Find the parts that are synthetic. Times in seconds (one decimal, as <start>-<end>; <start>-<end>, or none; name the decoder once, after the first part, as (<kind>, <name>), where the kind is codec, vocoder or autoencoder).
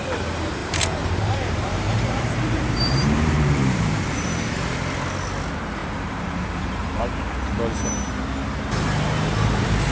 0.6-4.2 (vocoder, BigVGAN v2); 5.8-7.0